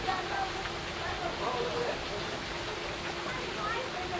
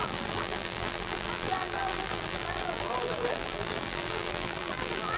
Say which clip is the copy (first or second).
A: second